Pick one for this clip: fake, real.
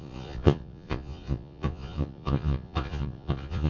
fake